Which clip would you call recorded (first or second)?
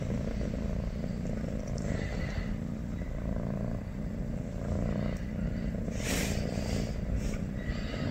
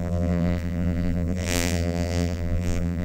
first